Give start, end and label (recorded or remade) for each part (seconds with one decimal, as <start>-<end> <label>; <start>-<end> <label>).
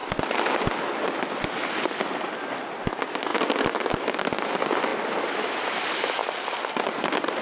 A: 0.0-7.4 recorded